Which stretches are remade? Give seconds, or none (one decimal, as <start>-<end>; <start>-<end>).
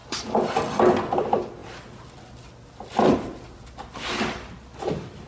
none